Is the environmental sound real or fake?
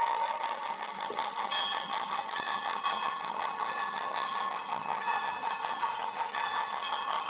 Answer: fake